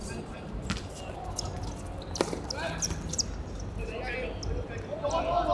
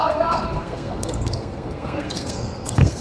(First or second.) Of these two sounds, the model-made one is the second